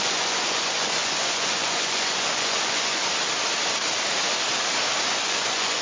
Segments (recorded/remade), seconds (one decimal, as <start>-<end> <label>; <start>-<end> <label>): 0.0-3.0 remade; 3.0-5.0 recorded; 5.0-5.8 remade